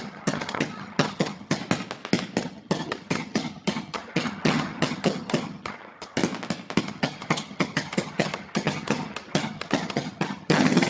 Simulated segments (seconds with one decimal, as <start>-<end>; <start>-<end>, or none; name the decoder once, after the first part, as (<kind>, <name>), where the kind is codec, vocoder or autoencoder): 0.0-1.6 (vocoder, HiFi-GAN); 2.4-6.2; 6.8-10.9